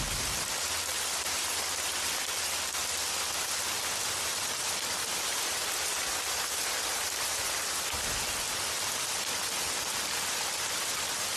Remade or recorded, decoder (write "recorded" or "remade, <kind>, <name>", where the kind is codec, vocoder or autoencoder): recorded